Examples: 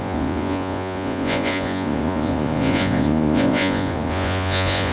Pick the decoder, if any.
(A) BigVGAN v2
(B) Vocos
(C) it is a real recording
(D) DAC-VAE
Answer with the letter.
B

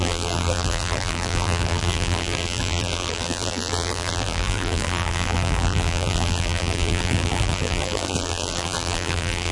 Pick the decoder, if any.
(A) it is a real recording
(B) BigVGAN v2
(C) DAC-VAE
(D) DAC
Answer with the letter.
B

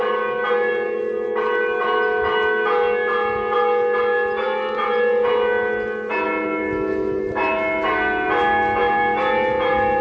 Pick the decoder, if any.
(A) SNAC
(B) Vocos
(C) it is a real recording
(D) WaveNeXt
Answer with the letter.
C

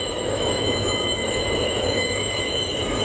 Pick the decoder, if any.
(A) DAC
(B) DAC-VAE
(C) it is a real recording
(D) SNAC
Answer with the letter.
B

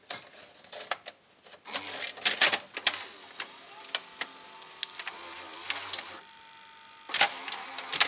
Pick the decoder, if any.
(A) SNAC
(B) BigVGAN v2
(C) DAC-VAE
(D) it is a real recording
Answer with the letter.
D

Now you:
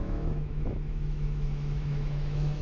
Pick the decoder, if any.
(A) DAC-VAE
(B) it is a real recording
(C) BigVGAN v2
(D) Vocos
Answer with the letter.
A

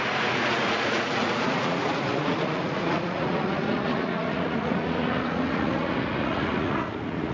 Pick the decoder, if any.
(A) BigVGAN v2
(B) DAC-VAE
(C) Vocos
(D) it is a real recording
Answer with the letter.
C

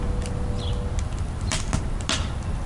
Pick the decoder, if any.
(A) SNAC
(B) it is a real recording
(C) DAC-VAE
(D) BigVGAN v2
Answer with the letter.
B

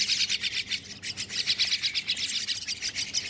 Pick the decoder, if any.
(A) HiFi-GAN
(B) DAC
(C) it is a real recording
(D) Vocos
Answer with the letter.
C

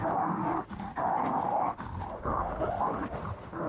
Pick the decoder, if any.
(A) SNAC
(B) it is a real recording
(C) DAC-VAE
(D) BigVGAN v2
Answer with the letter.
C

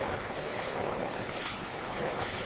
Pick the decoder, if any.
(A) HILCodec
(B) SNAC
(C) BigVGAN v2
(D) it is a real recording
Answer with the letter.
A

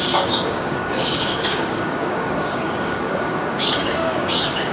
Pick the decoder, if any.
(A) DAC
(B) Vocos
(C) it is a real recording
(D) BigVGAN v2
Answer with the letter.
A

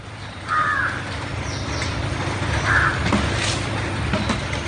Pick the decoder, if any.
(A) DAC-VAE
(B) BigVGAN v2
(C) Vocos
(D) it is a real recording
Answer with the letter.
D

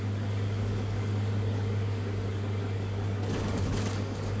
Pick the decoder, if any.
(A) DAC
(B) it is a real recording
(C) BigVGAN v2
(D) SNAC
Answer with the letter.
A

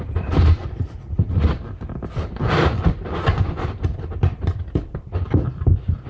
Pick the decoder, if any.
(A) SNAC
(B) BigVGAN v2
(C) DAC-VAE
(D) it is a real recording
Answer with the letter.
B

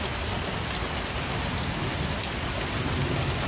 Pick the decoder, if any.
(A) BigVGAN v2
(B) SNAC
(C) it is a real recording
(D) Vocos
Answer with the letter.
C